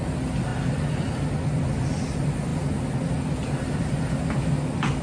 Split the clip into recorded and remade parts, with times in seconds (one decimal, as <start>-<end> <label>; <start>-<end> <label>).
0.0-5.0 recorded